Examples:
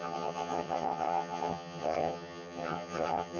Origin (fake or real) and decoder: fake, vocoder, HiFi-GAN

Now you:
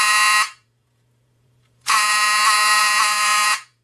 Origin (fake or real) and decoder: fake, vocoder, Vocos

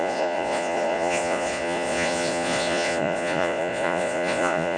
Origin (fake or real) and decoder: fake, vocoder, Vocos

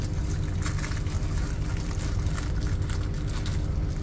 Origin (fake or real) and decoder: real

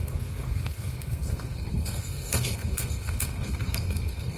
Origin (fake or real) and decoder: fake, codec, SNAC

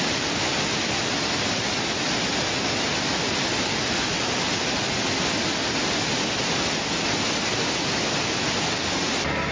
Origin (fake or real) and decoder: real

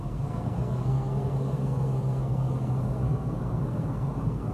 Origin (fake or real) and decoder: fake, codec, SNAC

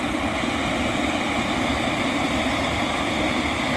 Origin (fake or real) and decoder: real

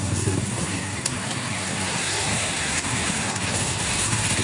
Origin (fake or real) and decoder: fake, codec, SNAC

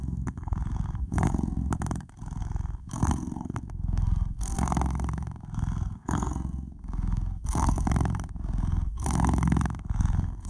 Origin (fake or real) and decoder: fake, codec, SNAC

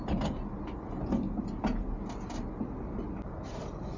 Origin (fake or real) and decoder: real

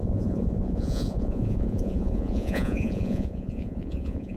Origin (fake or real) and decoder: fake, vocoder, Vocos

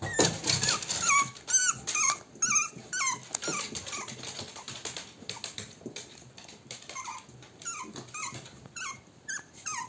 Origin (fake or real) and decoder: real